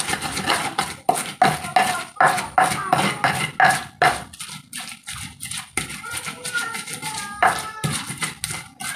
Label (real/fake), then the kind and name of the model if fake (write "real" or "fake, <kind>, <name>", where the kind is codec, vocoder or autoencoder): real